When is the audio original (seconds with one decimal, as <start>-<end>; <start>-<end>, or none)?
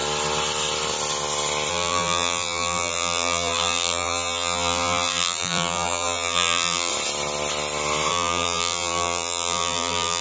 0.0-1.7; 6.9-8.1